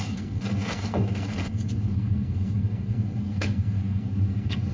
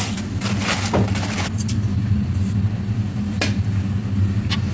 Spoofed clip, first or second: first